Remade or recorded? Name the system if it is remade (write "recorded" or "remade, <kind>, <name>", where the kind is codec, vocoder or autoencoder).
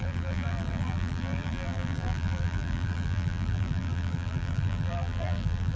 remade, vocoder, BigVGAN v2